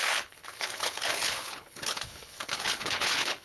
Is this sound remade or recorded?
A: remade